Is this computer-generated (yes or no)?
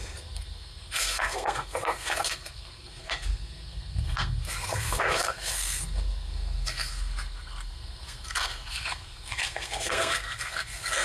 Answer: yes